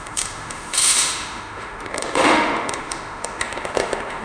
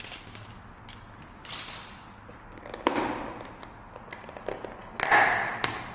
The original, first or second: second